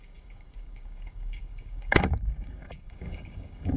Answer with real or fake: fake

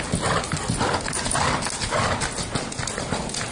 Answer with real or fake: real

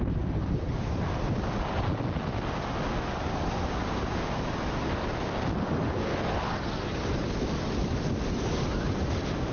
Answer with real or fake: real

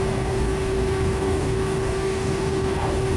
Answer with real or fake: fake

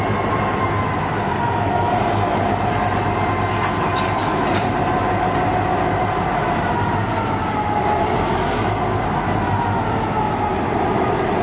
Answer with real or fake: real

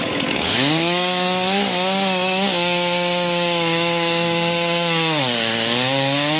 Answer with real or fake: fake